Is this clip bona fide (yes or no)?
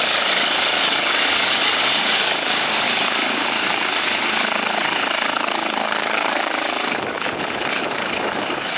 no